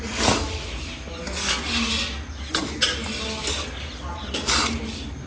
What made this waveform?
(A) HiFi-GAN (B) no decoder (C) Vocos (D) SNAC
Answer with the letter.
B